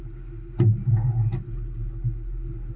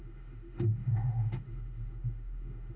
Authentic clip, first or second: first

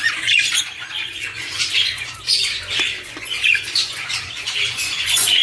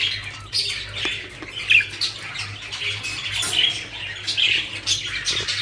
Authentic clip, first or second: second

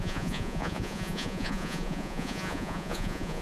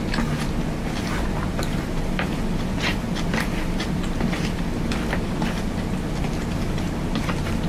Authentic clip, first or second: second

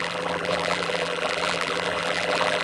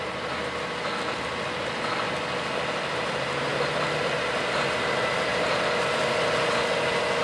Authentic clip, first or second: second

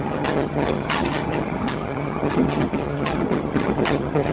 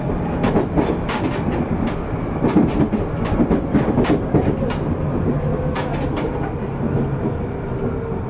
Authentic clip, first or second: second